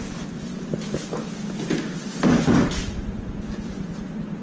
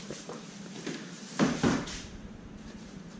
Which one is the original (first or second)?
first